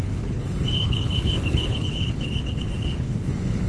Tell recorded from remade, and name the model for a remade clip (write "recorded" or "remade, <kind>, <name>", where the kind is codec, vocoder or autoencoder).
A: remade, codec, HILCodec